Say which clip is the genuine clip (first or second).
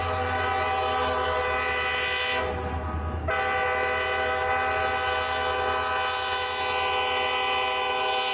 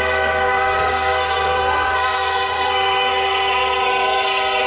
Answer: first